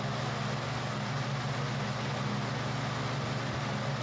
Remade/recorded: recorded